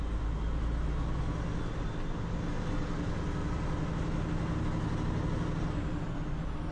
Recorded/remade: recorded